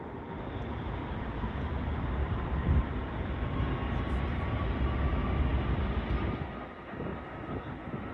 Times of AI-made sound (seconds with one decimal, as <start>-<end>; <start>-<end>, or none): 2.2-3.2; 7.1-7.6